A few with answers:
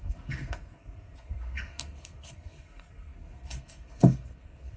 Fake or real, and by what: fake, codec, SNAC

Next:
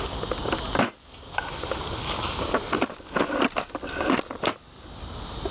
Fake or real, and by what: real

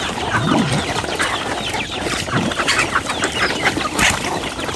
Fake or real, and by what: real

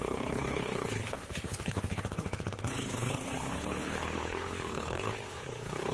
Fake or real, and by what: fake, codec, HILCodec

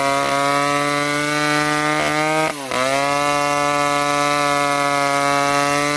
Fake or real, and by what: real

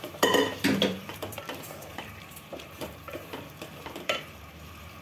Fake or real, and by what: fake, vocoder, BigVGAN v2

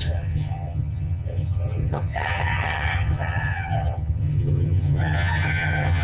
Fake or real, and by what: fake, vocoder, HiFi-GAN